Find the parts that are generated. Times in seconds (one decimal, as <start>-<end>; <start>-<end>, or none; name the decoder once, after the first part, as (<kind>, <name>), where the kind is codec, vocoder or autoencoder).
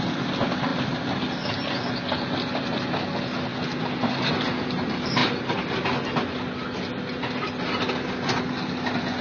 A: none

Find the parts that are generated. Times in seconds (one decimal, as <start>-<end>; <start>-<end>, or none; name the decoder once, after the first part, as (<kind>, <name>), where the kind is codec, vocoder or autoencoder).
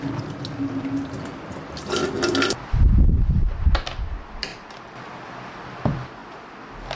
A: 4.5-5.2 (vocoder, BigVGAN v2)